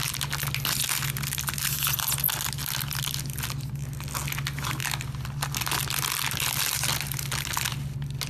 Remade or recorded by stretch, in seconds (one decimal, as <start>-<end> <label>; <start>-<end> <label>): 0.0-8.3 recorded